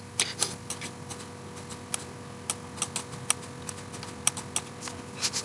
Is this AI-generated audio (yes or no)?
no